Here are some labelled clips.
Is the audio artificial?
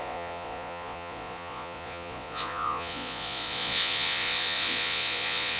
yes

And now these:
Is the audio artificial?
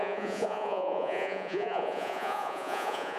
yes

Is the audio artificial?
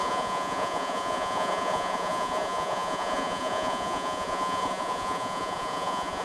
yes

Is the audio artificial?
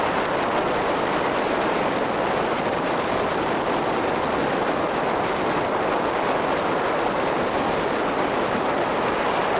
no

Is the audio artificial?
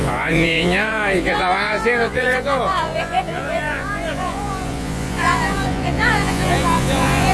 yes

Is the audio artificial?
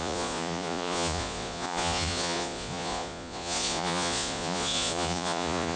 yes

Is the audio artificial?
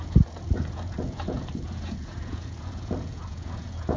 yes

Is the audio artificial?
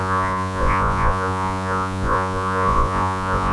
yes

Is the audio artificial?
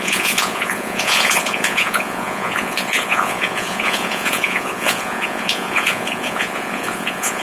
yes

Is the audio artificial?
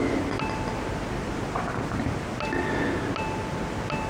no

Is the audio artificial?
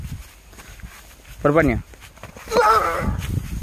no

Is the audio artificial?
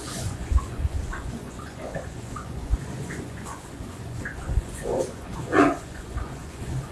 yes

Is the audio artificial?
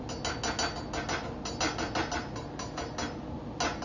no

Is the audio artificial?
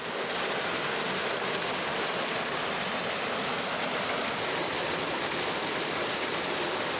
no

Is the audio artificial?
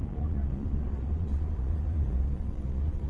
yes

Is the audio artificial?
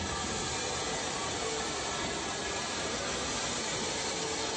no